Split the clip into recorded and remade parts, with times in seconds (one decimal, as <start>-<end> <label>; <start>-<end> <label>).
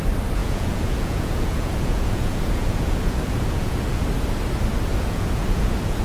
0.0-0.4 recorded; 0.4-4.0 remade; 4.0-4.9 recorded; 4.9-6.0 remade